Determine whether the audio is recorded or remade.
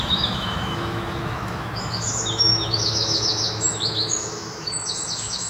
remade